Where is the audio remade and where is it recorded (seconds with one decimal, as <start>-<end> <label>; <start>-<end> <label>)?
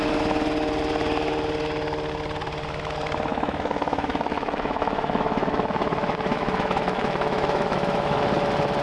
0.0-3.3 recorded; 3.3-8.2 remade; 8.2-8.8 recorded